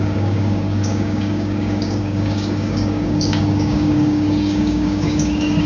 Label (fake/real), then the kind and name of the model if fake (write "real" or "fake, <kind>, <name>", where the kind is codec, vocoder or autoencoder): fake, codec, DAC